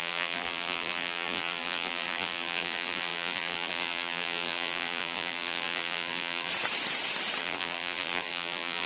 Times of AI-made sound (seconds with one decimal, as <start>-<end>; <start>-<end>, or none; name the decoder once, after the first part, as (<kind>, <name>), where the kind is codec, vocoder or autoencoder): 0.0-6.5 (vocoder, BigVGAN v2); 7.4-8.9